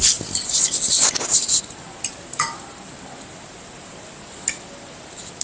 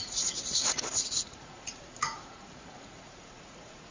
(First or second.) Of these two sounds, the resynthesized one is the second